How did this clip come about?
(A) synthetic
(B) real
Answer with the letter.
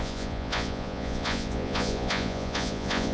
A